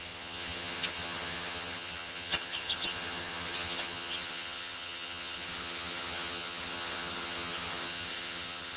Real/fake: fake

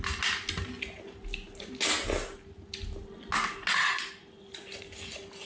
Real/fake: real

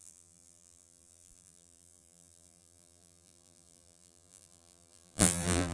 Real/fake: fake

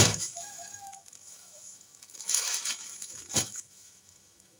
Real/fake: fake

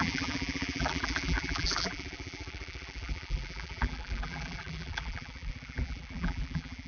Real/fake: fake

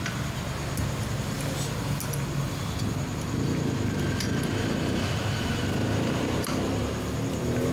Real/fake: real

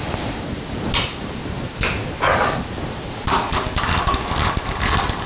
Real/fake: real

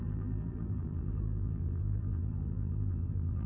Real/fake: fake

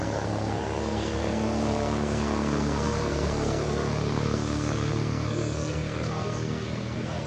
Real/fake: fake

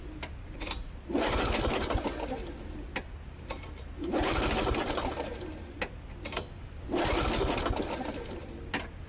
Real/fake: real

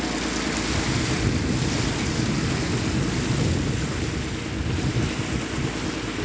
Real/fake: real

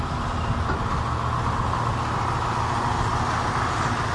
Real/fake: real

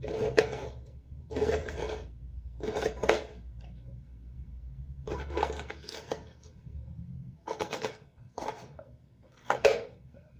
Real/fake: fake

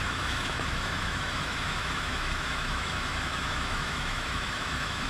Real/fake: fake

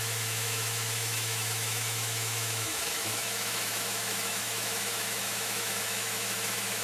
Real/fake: fake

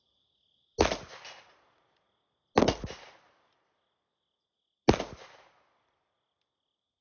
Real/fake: real